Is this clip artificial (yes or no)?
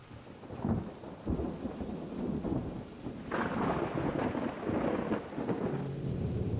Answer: no